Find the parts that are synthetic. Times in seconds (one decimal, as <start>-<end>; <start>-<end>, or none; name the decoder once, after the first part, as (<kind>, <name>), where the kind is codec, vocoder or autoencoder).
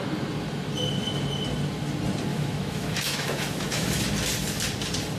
2.3-4.0 (autoencoder, DAC-VAE)